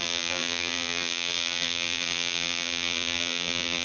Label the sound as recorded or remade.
remade